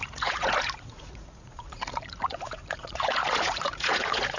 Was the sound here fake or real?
fake